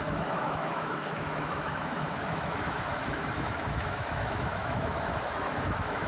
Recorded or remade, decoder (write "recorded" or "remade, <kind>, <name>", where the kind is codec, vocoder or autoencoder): remade, autoencoder, DAC-VAE